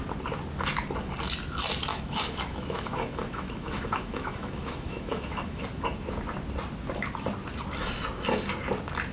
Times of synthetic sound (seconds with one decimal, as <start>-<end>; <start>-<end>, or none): 1.9-5.6